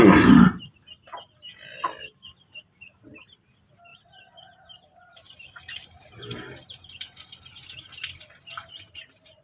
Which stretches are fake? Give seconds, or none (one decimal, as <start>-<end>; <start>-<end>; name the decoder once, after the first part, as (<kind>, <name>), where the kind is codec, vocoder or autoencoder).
none